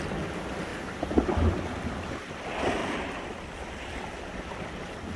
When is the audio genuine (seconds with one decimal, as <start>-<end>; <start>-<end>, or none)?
0.0-0.7; 1.5-2.8; 3.8-5.2